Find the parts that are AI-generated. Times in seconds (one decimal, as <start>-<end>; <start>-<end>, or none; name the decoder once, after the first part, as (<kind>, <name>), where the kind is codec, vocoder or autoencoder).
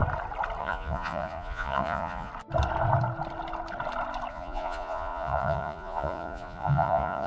0.6-2.3 (vocoder, Vocos); 4.3-7.3